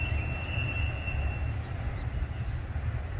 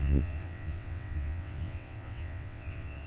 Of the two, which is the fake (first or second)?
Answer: second